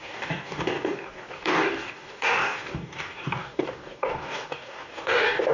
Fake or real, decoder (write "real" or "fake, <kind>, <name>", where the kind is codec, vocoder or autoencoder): fake, codec, DAC